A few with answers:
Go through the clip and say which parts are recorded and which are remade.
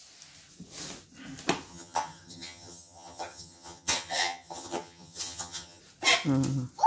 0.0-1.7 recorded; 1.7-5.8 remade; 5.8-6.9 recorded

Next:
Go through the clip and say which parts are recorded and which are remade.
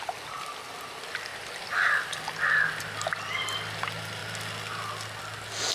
0.0-5.7 recorded